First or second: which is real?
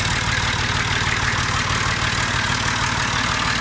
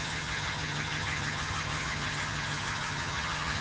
first